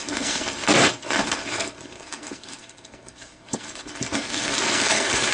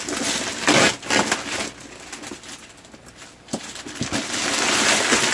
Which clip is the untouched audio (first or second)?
second